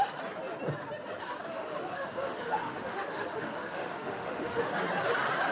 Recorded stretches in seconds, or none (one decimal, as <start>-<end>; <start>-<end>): 0.0-1.5; 4.6-5.5